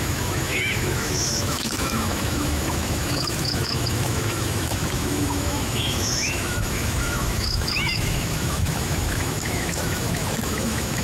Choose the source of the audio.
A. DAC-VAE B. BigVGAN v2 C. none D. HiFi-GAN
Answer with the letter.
A